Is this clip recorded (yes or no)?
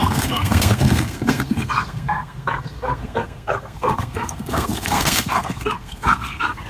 no